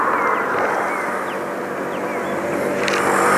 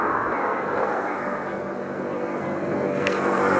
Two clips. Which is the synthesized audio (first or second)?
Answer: second